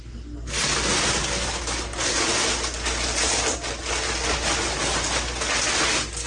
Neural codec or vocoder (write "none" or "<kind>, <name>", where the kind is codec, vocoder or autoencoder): none